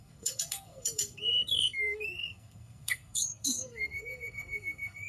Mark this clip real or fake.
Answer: fake